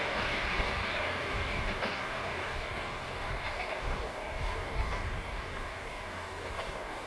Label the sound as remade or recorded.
remade